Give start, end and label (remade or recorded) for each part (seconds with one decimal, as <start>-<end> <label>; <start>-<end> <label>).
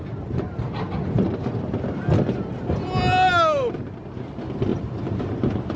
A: 0.0-4.7 recorded; 4.7-5.2 remade; 5.2-5.8 recorded